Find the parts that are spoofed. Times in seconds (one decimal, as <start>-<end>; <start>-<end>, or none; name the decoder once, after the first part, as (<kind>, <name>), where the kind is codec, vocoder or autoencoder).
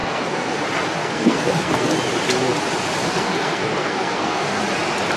0.0-0.6 (codec, SNAC); 1.0-1.9; 3.0-4.6